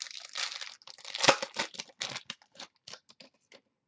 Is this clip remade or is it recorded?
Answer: recorded